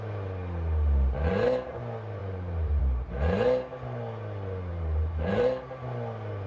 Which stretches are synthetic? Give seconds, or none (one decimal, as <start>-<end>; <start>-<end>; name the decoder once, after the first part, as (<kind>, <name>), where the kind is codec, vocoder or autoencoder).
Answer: 2.2-2.8 (vocoder, BigVGAN v2); 4.7-5.3